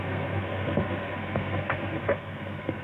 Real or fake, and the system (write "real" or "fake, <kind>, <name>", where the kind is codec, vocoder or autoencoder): fake, codec, SNAC